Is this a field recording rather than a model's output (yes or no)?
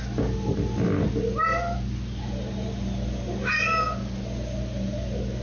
yes